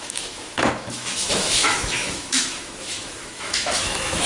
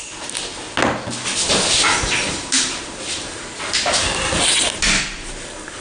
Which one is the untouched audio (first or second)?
second